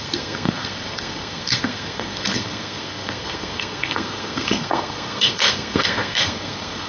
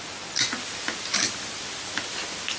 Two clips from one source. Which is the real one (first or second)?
second